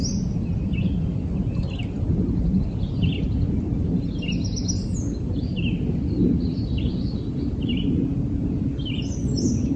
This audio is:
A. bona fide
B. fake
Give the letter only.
A